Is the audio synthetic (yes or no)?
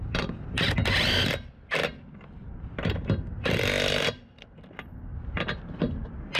no